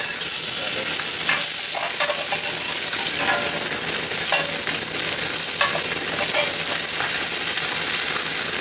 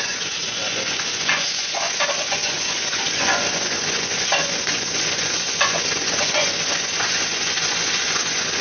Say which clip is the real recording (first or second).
first